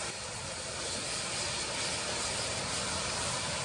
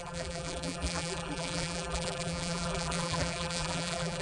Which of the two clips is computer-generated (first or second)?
second